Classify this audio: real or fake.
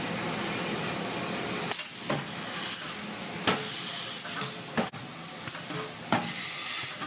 real